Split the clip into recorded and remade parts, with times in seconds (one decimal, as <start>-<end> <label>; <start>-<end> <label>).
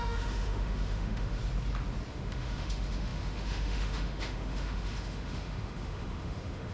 0.0-1.4 remade; 1.4-2.1 recorded; 2.1-6.7 remade